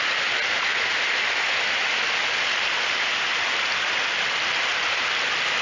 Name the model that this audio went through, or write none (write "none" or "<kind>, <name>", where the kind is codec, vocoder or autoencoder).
none